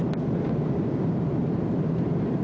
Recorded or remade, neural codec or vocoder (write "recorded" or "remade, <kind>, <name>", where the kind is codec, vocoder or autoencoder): recorded